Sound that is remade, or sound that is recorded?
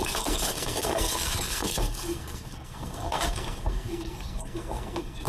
remade